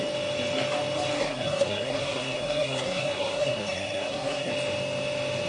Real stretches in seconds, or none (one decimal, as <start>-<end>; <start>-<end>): 0.0-1.2; 4.5-5.5